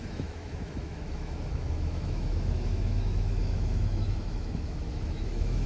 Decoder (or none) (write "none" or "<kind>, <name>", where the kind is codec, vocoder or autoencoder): autoencoder, DAC-VAE